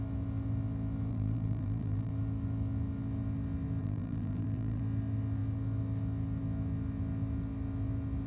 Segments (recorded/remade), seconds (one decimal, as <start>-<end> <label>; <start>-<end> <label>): 0.0-1.1 recorded; 1.1-2.1 remade; 2.1-3.8 recorded; 3.8-4.8 remade; 4.8-8.3 recorded